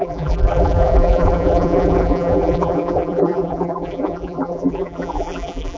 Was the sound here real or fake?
fake